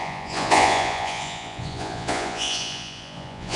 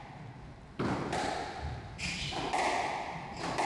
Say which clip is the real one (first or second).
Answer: second